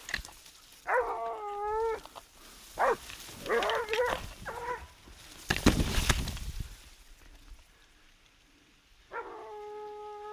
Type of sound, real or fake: real